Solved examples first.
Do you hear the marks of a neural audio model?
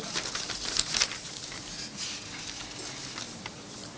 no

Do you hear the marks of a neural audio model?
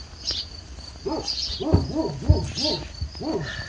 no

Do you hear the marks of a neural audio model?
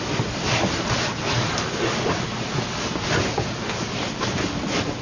no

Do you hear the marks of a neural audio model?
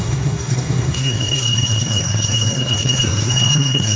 yes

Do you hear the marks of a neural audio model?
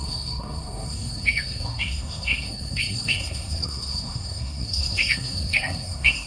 yes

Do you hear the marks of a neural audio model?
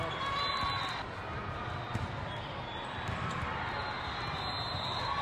no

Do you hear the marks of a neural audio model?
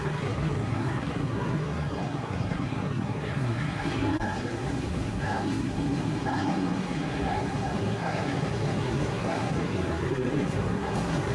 yes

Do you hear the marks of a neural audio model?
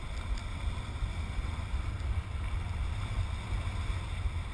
no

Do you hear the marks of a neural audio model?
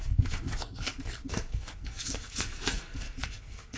yes